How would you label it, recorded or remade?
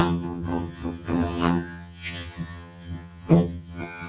remade